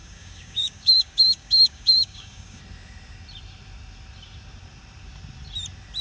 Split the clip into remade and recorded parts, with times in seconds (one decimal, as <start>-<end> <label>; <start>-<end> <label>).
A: 0.0-2.6 remade; 2.6-6.0 recorded